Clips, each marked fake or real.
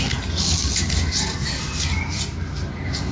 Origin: real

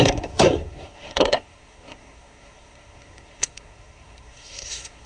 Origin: fake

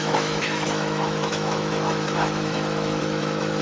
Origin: fake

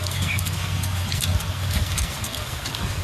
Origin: fake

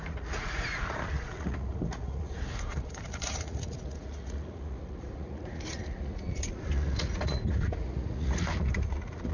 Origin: fake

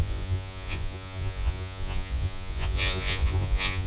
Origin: fake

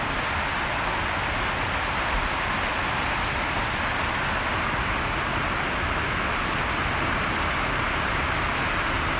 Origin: real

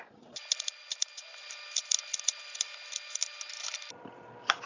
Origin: real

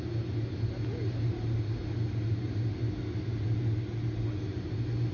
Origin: real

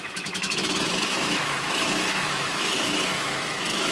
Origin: fake